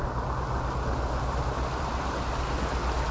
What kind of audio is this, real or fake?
real